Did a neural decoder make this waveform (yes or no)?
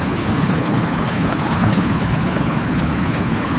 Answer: yes